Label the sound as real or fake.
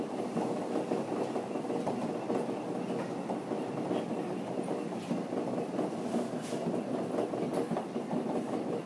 real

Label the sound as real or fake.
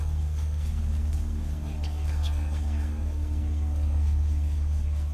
fake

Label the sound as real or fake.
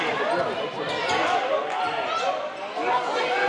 real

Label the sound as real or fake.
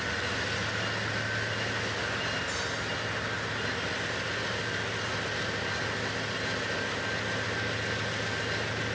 real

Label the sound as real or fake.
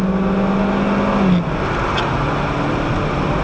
real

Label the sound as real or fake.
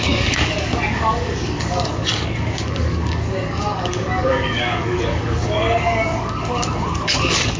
fake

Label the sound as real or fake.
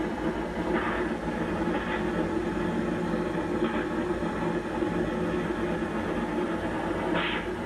real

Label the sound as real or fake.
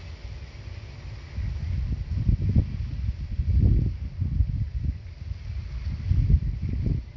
real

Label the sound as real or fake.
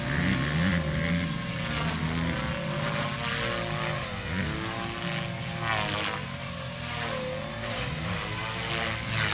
real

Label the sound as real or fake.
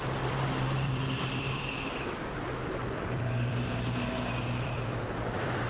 fake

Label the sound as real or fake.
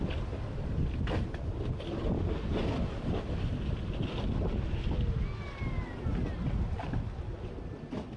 real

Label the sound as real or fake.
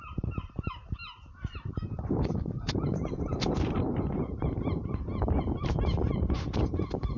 fake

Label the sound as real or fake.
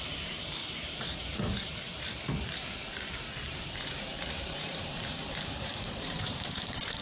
fake